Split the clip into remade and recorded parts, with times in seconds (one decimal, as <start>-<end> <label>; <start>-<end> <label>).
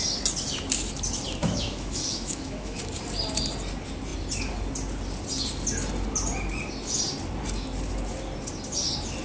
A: 0.0-1.4 recorded; 1.4-2.8 remade; 2.8-9.2 recorded